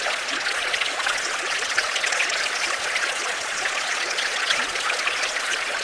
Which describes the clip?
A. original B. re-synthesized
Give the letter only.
B